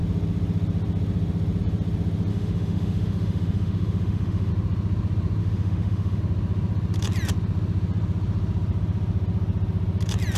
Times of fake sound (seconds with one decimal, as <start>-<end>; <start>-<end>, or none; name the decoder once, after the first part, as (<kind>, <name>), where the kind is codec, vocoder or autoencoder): 2.3-4.5 (autoencoder, DAC-VAE); 5.4-6.2

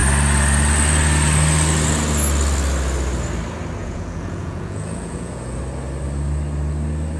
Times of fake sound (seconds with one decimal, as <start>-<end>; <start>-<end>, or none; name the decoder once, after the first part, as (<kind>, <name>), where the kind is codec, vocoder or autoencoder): 3.8-5.6 (vocoder, Vocos)